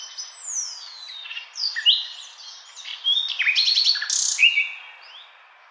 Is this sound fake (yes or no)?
no